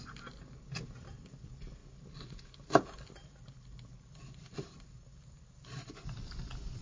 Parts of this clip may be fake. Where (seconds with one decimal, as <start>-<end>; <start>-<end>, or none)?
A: none

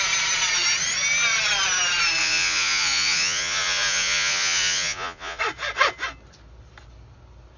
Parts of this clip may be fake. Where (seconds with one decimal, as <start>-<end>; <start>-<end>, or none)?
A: 2.2-5.4

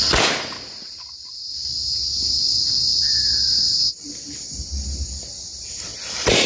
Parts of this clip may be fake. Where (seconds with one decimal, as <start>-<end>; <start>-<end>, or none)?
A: none

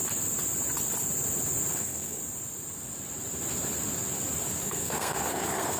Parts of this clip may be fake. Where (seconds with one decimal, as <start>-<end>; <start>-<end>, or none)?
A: 1.7-2.2; 4.6-5.8

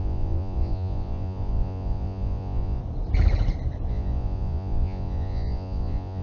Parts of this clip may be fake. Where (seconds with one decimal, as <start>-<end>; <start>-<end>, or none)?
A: 0.0-2.8; 3.9-6.2

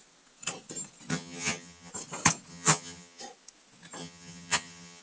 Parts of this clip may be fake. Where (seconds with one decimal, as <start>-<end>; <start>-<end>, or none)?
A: 1.1-1.9; 2.5-3.2; 4.0-5.0